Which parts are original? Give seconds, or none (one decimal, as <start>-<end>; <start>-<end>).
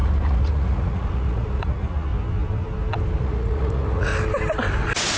2.1-3.2; 4.1-5.2